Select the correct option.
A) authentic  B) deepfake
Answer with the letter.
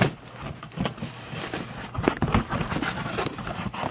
A